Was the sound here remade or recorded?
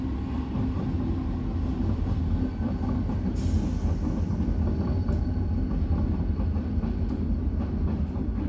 recorded